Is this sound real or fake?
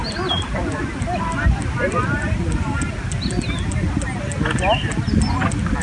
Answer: real